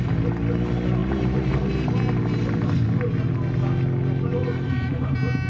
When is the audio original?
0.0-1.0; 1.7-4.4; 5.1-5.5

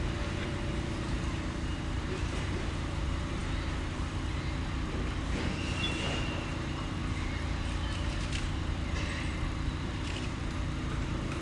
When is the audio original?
7.0-8.2

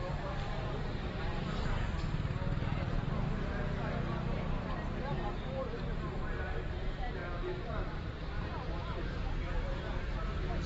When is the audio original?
1.3-4.7

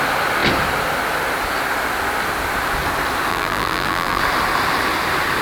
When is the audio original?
0.0-3.3; 4.2-5.4

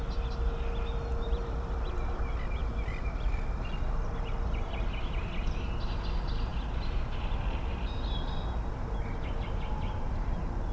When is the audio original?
0.0-1.1; 1.9-6.5; 7.9-10.7

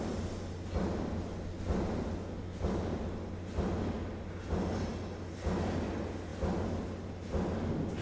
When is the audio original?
0.0-8.0